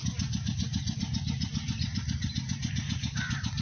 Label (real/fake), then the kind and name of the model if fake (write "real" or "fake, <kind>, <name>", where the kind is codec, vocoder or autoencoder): real